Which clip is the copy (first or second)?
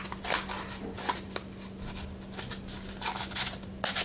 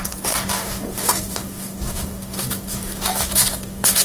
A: second